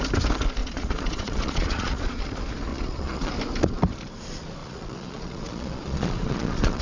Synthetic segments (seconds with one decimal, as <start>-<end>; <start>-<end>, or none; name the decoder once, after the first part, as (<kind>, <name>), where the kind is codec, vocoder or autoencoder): 0.6-2.2 (vocoder, Vocos); 2.7-3.3; 4.6-6.8